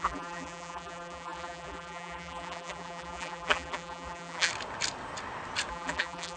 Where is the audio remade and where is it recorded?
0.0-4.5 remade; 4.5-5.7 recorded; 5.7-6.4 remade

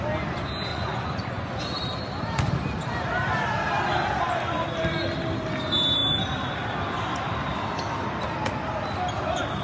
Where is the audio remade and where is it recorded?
0.0-0.7 recorded; 0.7-1.6 remade; 1.6-9.6 recorded

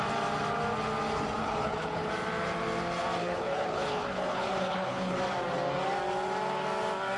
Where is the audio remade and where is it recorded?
0.0-1.4 recorded; 1.4-2.1 remade; 2.1-3.2 recorded; 3.2-5.2 remade; 5.2-7.2 recorded

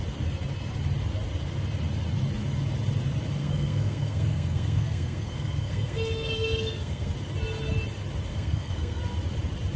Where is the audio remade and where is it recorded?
0.0-3.4 recorded; 3.4-7.1 remade; 7.1-8.3 recorded; 8.3-9.0 remade; 9.0-9.8 recorded